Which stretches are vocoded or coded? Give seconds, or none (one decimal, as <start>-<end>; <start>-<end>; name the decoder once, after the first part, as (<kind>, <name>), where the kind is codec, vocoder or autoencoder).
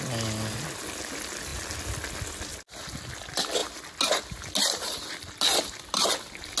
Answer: none